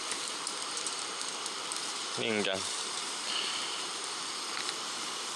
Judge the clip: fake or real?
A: fake